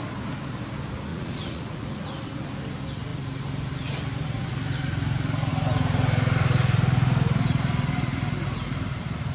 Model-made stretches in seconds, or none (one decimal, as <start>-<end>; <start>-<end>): 1.1-2.1